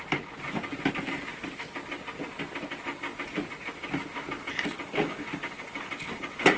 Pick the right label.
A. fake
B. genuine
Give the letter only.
B